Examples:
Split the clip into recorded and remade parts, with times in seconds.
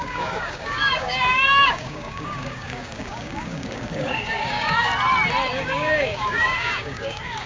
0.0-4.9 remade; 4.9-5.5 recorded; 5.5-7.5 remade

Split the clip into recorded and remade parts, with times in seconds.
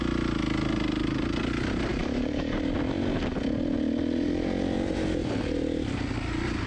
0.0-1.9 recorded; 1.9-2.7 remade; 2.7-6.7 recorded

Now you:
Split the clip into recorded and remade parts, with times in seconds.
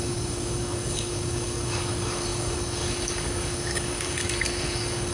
0.0-5.1 remade